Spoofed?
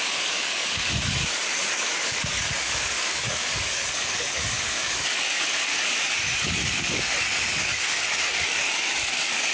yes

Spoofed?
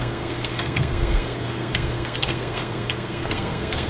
yes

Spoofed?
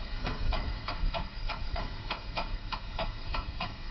yes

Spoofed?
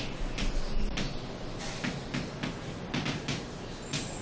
no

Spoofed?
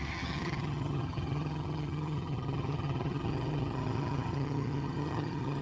yes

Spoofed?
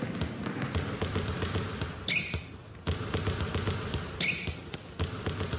no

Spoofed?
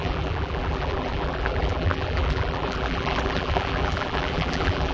yes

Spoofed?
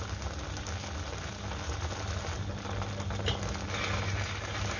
no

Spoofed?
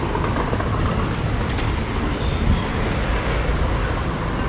no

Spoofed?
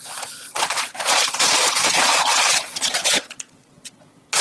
yes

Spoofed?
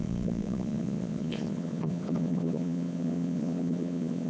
yes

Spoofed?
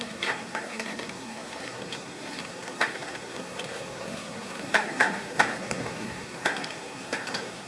yes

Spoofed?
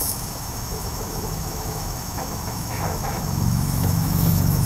yes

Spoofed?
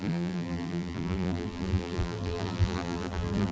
yes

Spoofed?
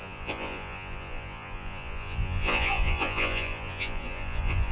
yes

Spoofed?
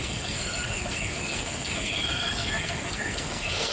yes